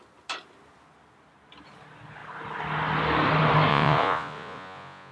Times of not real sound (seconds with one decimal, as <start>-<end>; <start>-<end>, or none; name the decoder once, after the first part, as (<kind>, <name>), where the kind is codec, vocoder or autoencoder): 3.7-5.1 (vocoder, Vocos)